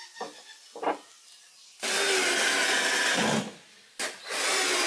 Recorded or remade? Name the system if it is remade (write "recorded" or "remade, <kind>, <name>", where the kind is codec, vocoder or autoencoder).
recorded